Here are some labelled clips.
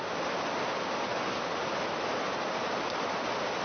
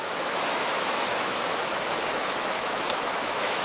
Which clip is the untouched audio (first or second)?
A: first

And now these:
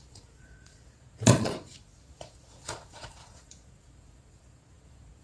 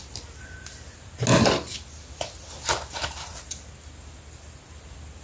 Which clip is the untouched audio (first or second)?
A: second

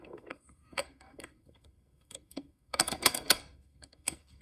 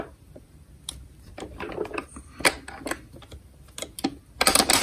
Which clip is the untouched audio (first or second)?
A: second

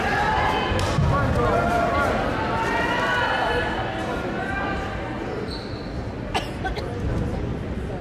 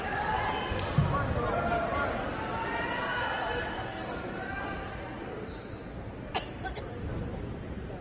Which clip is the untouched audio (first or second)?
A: first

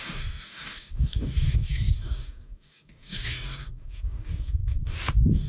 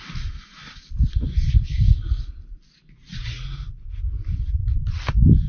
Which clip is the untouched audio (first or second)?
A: second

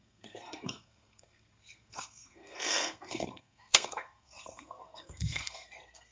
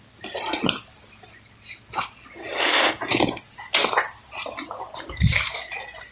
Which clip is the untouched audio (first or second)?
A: second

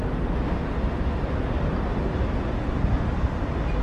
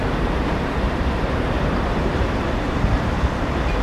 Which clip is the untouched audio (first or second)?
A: first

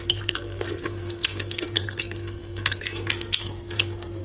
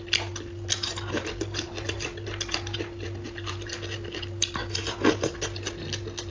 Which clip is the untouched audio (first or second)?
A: second